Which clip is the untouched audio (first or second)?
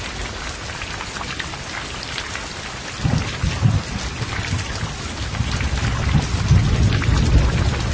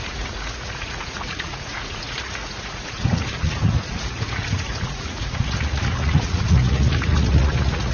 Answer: first